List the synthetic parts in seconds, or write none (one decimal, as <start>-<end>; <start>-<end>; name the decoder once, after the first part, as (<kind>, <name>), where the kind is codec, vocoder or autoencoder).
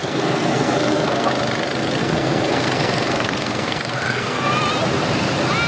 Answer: 0.0-1.3 (codec, SNAC); 2.0-4.5